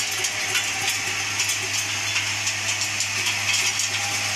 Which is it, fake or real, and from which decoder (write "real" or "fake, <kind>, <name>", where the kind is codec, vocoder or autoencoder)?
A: real